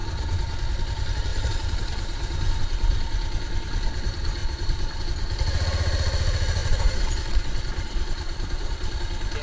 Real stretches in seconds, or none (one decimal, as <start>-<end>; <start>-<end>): 0.0-1.3; 2.6-4.4; 5.0-6.6; 9.0-9.4